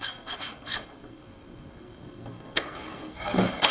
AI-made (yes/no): yes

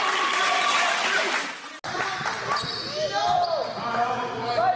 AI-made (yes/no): no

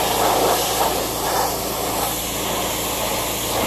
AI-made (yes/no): no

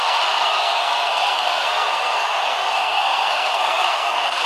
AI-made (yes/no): yes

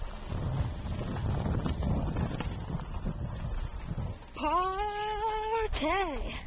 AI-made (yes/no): no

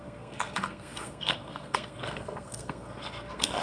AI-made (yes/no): yes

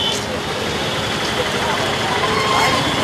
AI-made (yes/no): no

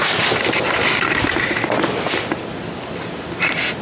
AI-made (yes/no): no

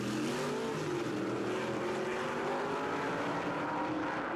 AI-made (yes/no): no